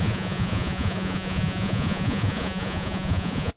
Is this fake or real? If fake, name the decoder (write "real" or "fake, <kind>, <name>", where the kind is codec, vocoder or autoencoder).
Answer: fake, vocoder, Vocos